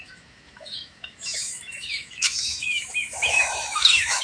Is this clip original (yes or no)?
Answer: no